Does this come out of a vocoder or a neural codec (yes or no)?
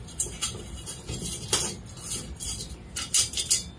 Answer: no